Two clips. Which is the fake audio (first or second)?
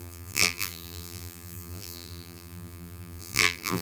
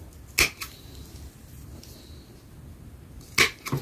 first